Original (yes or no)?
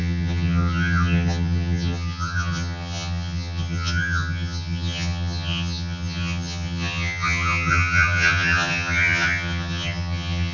no